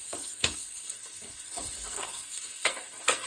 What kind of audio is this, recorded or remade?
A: remade